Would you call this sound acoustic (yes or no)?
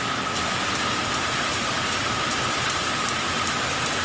yes